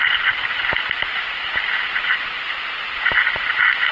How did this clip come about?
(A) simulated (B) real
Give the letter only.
B